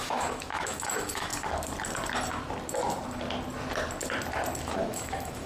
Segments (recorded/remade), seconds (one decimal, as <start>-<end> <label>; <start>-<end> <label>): 0.0-1.3 remade; 1.3-4.6 recorded; 4.6-5.5 remade